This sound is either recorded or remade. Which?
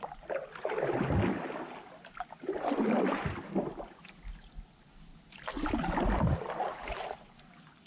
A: recorded